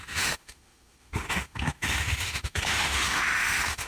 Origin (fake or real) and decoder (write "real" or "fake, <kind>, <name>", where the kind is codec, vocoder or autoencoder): fake, autoencoder, DAC-VAE